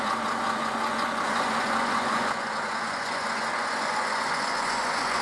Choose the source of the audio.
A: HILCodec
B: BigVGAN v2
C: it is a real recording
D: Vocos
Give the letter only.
D